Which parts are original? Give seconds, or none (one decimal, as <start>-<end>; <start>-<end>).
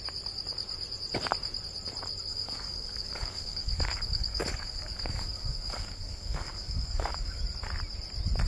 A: 0.0-2.3; 7.4-8.5